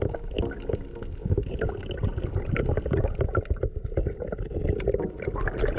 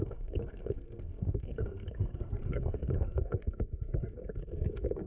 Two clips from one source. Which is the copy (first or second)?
second